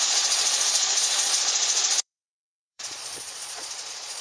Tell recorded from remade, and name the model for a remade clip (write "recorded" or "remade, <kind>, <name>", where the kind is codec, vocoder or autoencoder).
remade, vocoder, Vocos